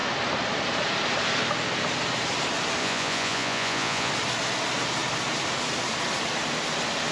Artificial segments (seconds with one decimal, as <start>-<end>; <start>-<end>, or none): 2.8-4.1